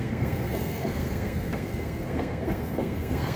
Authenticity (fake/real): fake